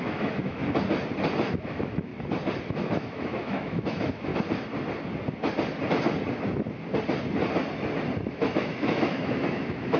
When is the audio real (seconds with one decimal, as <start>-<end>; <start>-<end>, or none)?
0.6-1.5; 2.1-2.7; 4.3-8.3